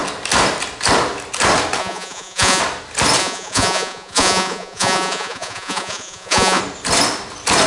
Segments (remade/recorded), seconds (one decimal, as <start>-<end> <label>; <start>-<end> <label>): 0.0-1.8 recorded; 1.8-2.6 remade; 2.6-3.2 recorded; 3.2-6.6 remade; 6.6-7.7 recorded